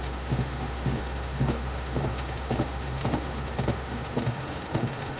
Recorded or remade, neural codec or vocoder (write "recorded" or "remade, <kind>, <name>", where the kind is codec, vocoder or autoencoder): remade, autoencoder, DAC-VAE